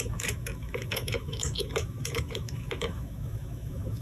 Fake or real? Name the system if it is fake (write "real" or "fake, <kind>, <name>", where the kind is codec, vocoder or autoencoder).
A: fake, autoencoder, DAC-VAE